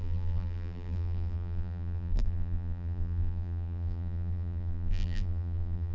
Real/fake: fake